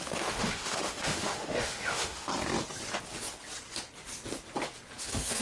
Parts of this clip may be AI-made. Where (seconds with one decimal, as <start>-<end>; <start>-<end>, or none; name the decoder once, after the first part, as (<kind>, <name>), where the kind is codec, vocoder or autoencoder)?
0.0-2.3 (autoencoder, DAC-VAE); 5.0-5.4